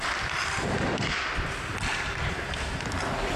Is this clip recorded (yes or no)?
yes